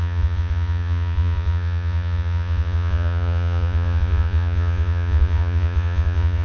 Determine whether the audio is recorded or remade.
remade